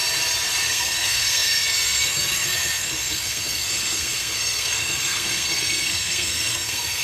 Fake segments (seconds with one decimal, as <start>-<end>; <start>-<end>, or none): 0.7-7.0